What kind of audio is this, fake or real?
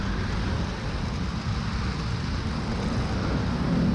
real